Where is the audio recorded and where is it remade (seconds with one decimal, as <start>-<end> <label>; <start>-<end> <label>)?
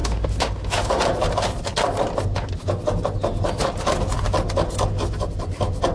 0.0-1.0 remade; 1.0-5.9 recorded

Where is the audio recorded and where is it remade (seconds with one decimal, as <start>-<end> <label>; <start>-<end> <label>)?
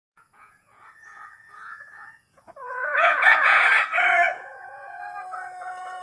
0.0-3.6 remade; 3.6-4.3 recorded; 4.3-5.0 remade; 5.0-6.0 recorded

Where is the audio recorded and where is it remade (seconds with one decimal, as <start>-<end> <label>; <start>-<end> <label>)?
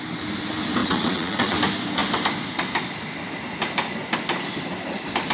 0.0-0.8 recorded; 0.8-1.6 remade; 1.6-5.3 recorded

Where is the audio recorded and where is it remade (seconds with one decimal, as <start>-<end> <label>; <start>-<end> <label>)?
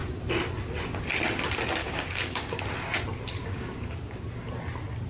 0.0-1.8 recorded; 1.8-2.6 remade; 2.6-3.4 recorded; 3.4-4.1 remade; 4.1-5.1 recorded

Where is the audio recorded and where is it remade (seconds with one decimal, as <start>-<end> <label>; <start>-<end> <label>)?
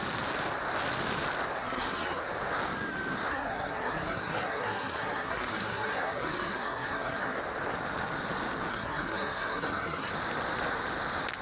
0.0-1.6 recorded; 1.6-2.2 remade; 2.2-3.3 recorded; 3.3-7.4 remade; 7.4-8.7 recorded; 8.7-10.1 remade; 10.1-11.4 recorded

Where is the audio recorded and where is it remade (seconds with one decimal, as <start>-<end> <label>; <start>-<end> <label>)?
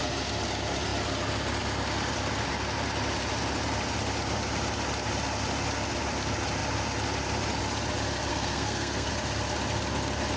0.0-8.3 recorded; 8.3-9.1 remade; 9.1-10.4 recorded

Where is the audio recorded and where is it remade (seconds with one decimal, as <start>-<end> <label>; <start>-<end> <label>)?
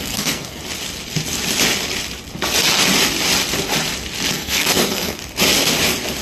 0.0-0.6 remade; 0.6-4.3 recorded; 4.3-5.2 remade; 5.2-6.2 recorded